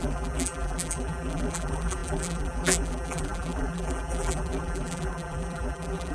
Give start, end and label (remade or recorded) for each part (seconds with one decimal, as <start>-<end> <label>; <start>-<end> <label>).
0.0-6.1 remade